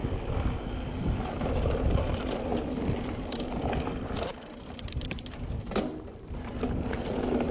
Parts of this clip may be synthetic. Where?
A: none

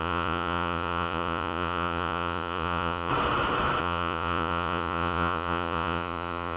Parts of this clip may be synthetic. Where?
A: 0.0-3.1 (vocoder, Vocos); 3.8-6.6

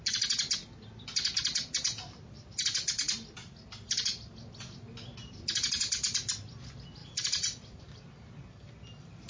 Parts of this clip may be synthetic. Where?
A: 7.0-7.8 (vocoder, Vocos)

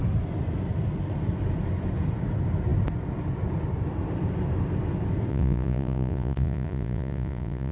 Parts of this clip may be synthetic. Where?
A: 5.3-7.7 (vocoder, Vocos)